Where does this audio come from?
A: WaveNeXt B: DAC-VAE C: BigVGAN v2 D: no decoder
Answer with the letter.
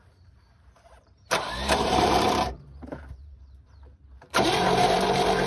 C